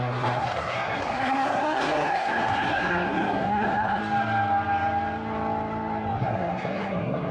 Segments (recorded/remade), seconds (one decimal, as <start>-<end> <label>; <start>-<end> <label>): 0.0-4.0 remade; 4.0-6.2 recorded; 6.2-7.3 remade